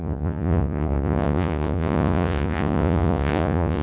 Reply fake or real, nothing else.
fake